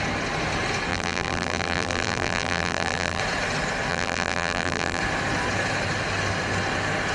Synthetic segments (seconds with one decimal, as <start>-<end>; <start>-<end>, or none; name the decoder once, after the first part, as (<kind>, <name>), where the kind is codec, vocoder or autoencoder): 0.9-3.2 (vocoder, BigVGAN v2); 3.9-5.0